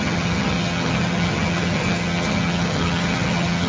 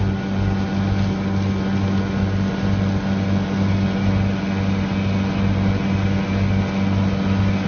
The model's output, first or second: first